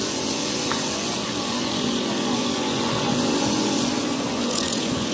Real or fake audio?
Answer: fake